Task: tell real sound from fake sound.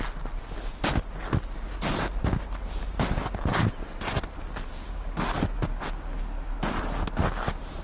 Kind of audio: real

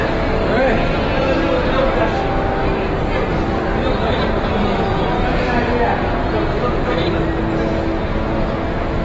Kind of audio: real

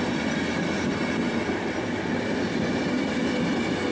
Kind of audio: real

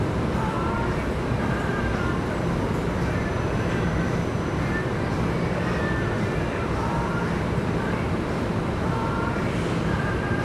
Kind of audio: fake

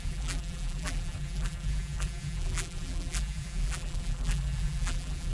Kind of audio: fake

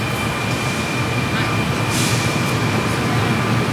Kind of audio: real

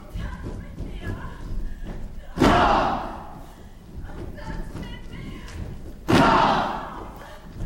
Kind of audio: real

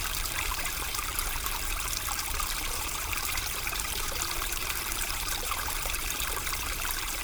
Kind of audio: fake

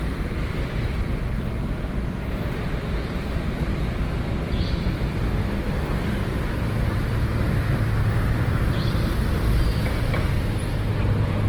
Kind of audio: fake